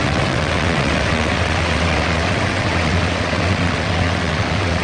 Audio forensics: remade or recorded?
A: remade